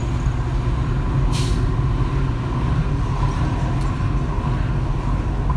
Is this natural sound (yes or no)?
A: yes